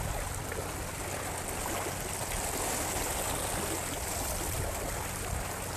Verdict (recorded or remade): recorded